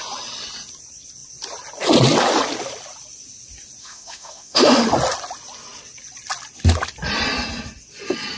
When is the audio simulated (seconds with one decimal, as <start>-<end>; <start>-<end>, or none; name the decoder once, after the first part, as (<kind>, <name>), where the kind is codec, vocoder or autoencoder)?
3.8-4.8 (autoencoder, DAC-VAE)